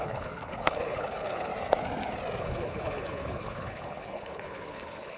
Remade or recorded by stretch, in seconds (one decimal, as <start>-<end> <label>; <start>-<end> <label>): 0.0-1.5 remade; 1.5-2.4 recorded; 2.4-5.2 remade